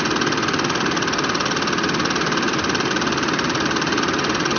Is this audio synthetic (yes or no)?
no